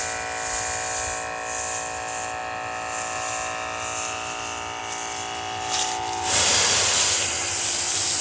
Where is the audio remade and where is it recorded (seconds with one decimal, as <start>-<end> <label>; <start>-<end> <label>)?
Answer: 0.0-8.2 recorded